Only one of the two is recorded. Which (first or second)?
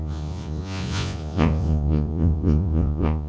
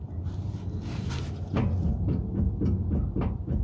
second